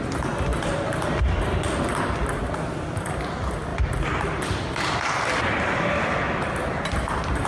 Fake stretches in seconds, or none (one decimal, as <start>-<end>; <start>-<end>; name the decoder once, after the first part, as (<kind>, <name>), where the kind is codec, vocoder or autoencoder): none